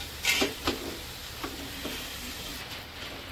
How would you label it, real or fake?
real